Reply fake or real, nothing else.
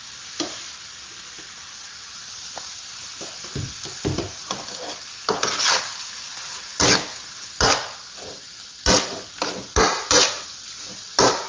real